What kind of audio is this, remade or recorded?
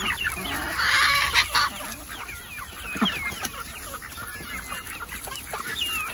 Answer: recorded